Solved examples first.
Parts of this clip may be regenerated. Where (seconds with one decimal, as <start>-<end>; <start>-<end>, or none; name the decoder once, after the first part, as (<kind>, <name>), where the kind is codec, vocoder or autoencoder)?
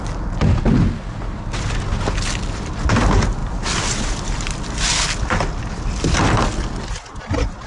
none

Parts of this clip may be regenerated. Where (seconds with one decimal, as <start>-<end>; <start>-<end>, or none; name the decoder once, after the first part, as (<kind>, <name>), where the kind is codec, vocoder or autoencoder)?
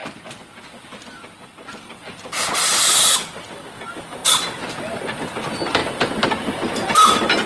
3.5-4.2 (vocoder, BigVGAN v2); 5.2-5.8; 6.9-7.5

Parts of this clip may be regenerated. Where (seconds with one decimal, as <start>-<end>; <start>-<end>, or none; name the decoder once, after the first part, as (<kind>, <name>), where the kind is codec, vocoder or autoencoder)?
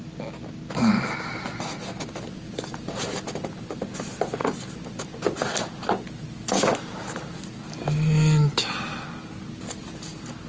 none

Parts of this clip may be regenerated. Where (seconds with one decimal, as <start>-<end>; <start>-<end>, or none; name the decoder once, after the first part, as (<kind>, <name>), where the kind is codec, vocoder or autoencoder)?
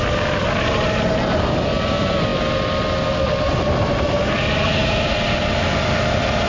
none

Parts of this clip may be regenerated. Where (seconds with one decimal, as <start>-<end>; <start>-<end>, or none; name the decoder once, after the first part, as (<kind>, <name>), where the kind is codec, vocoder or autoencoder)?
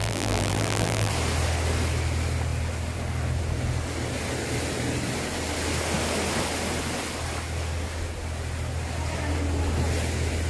0.0-1.1 (vocoder, BigVGAN v2)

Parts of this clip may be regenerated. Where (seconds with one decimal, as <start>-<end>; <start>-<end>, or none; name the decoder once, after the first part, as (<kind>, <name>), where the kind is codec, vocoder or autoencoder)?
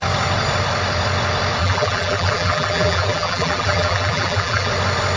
1.6-4.7 (vocoder, BigVGAN v2)